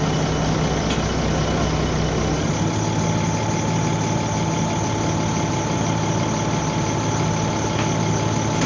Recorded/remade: recorded